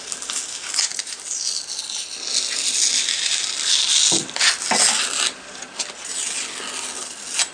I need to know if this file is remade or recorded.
recorded